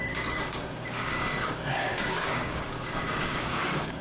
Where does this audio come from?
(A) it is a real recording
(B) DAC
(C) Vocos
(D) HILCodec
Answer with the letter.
B